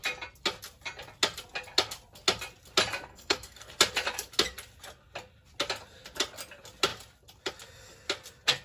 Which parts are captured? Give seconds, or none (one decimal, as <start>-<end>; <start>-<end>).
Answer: 0.0-3.1; 3.7-8.6